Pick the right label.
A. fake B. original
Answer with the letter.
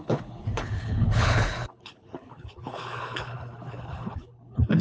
A